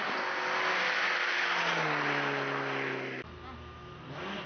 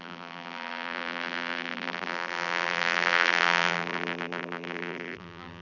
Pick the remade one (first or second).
second